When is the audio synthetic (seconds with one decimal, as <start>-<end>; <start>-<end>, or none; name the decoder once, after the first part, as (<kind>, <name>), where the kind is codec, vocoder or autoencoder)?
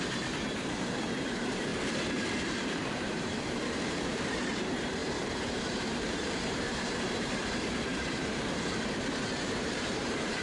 0.0-1.7 (vocoder, BigVGAN v2); 2.3-10.4